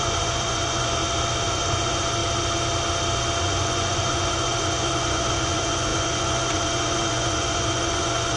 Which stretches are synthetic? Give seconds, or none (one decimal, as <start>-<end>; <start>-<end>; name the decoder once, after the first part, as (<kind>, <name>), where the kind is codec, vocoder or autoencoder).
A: 0.0-1.0 (vocoder, Vocos); 1.5-2.2; 3.4-8.4